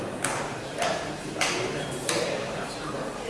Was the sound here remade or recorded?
remade